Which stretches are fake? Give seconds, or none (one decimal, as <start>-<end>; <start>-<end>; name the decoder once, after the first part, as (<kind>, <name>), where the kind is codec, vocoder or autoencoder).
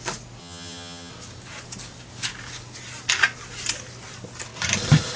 0.4-1.1 (vocoder, HiFi-GAN)